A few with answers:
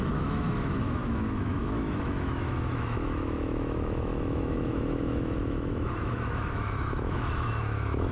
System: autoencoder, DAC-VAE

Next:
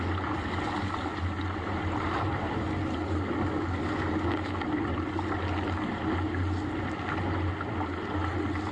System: none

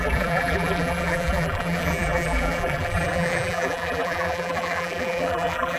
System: vocoder, BigVGAN v2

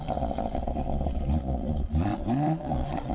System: vocoder, Vocos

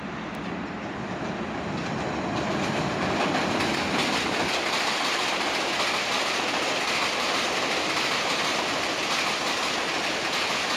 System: none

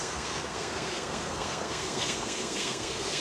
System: codec, SNAC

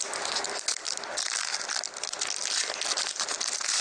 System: none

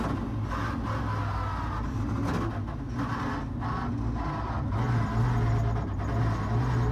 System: none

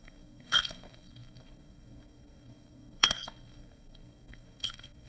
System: codec, SNAC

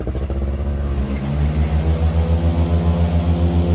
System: none